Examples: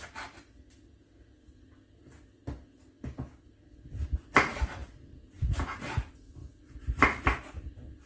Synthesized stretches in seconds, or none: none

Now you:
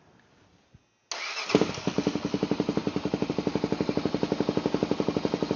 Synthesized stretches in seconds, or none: 2.8-3.3

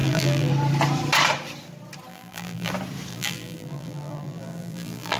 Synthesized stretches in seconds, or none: 0.0-0.5; 2.1-2.7; 3.1-5.2

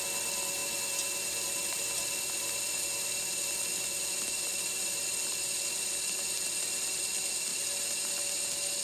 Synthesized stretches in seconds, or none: 7.5-8.1

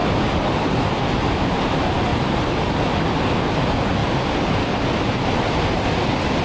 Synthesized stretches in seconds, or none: 0.0-1.6; 4.0-6.4

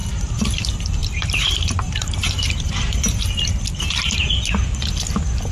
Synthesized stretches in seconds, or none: 0.0-0.6; 1.0-3.5

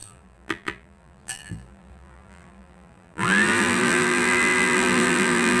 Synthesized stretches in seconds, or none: 0.0-5.6